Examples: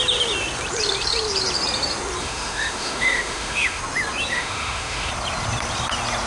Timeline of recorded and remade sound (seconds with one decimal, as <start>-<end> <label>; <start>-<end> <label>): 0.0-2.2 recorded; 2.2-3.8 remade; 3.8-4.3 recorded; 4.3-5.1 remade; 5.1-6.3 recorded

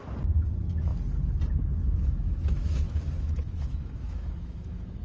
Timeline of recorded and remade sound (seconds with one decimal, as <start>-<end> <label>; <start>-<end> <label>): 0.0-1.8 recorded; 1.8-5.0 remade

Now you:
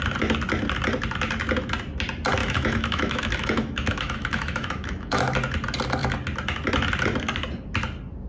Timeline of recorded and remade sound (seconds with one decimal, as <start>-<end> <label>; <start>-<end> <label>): 0.0-2.4 recorded; 2.4-5.2 remade; 5.2-8.3 recorded

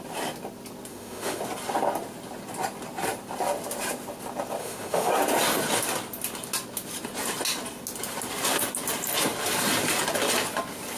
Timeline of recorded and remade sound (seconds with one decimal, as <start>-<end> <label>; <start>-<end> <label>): 0.0-0.9 recorded; 0.9-1.4 remade; 1.4-4.6 recorded; 4.6-5.1 remade; 5.1-11.0 recorded

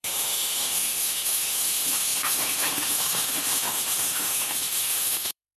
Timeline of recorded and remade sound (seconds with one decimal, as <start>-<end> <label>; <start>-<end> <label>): 0.0-5.6 remade

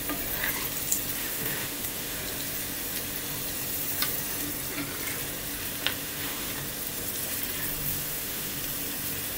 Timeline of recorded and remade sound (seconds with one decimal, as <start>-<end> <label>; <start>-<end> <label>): 0.0-1.2 recorded; 1.2-2.2 remade; 2.2-6.0 recorded; 6.0-6.5 remade; 6.5-7.9 recorded; 7.9-8.6 remade; 8.6-9.4 recorded